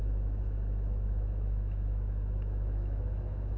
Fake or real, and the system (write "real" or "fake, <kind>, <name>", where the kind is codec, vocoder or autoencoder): fake, autoencoder, DAC-VAE